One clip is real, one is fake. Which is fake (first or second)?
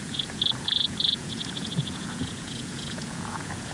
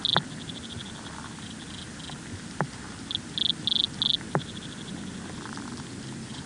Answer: first